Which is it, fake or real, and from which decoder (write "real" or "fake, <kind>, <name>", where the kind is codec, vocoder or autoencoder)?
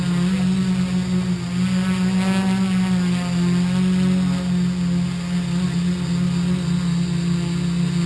real